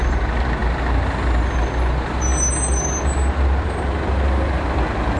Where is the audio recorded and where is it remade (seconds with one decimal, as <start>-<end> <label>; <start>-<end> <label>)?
0.0-5.2 recorded